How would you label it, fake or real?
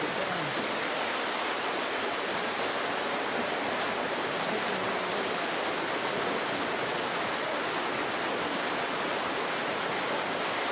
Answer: real